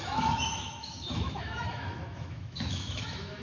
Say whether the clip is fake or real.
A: fake